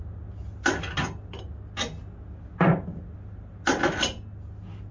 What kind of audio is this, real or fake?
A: real